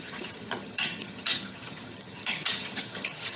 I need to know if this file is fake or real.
fake